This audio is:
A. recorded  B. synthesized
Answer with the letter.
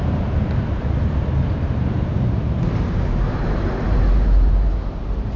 B